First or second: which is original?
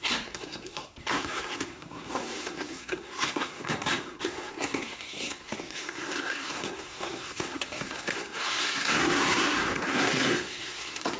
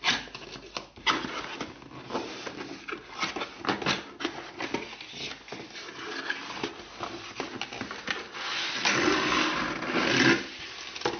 second